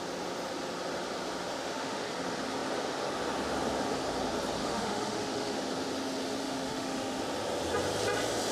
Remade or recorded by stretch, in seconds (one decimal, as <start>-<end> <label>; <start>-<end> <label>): 0.0-1.5 recorded; 1.5-2.1 remade; 2.1-4.6 recorded; 4.6-5.5 remade; 5.5-6.4 recorded; 6.4-7.2 remade; 7.2-8.5 recorded